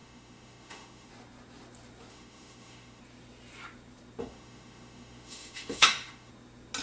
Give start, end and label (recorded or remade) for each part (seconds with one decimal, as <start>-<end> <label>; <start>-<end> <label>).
0.0-1.1 remade; 1.1-2.1 recorded; 2.1-3.0 remade; 3.0-4.2 recorded; 4.2-6.3 remade; 6.3-6.8 recorded